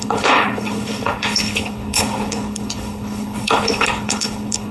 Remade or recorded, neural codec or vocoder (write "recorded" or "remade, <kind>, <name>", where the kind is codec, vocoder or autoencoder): remade, codec, HILCodec